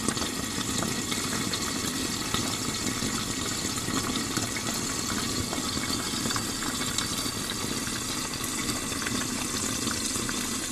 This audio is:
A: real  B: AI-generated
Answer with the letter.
A